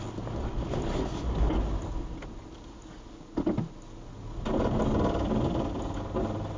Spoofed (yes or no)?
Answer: no